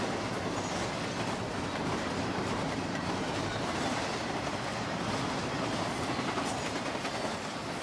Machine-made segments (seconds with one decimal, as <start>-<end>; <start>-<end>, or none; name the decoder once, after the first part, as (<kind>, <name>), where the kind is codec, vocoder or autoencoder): 1.7-3.8 (vocoder, BigVGAN v2); 4.7-5.2